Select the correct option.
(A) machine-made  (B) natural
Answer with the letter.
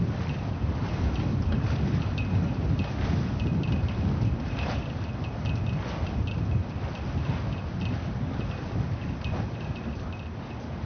B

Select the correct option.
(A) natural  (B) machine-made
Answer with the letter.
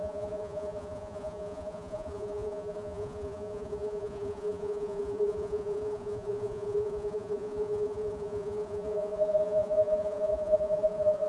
B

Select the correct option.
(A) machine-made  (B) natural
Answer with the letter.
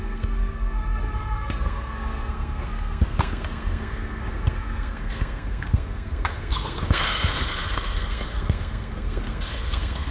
A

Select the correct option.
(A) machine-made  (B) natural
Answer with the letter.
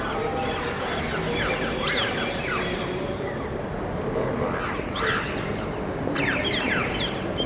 B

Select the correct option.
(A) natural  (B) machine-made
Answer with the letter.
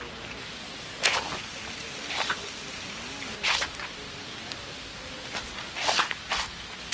A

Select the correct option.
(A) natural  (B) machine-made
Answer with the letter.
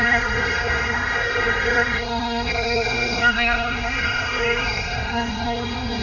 B